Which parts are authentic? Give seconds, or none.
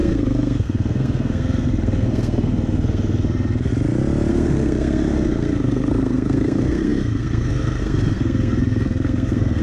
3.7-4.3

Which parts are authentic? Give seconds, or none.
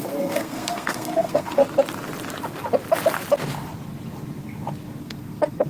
1.6-5.0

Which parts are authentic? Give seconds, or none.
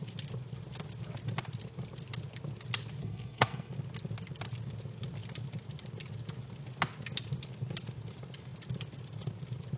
0.0-3.0; 3.7-9.8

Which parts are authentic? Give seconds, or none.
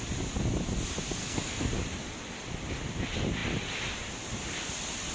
0.0-1.2; 1.7-5.1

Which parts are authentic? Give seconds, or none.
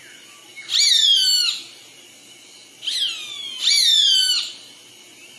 0.0-5.4